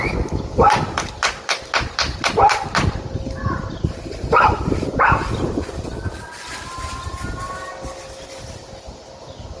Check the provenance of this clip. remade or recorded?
recorded